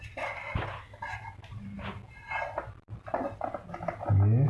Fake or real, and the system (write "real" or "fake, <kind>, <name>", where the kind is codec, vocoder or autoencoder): real